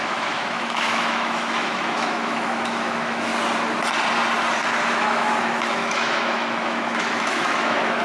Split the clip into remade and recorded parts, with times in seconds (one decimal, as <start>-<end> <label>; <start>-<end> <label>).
0.0-3.3 remade; 3.3-4.9 recorded; 4.9-8.0 remade